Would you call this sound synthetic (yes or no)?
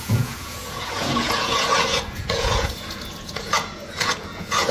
yes